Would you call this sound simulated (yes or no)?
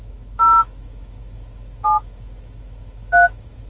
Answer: yes